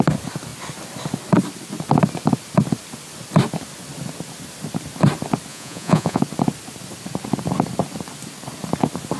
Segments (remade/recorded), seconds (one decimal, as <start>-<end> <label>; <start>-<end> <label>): 0.0-5.5 recorded; 5.5-6.2 remade; 6.2-9.2 recorded